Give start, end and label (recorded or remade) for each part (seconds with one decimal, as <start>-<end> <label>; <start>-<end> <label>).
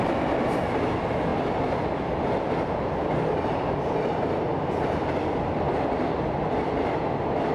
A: 0.0-7.5 recorded